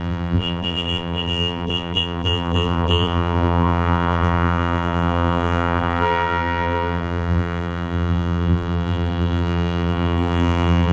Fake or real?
fake